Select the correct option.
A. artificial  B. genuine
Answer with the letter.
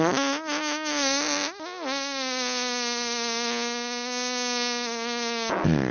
B